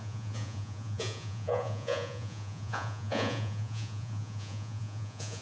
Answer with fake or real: fake